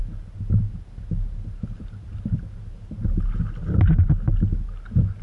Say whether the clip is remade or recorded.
recorded